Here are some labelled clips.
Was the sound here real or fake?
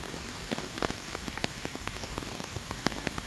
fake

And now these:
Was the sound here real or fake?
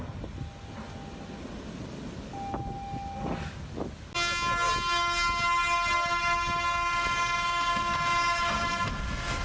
real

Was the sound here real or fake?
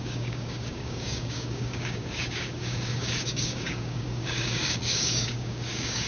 fake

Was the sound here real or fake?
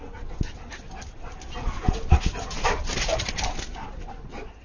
real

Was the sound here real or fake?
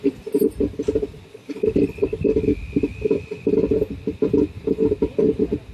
real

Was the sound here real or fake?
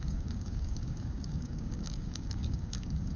fake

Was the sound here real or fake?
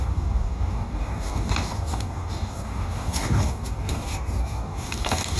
fake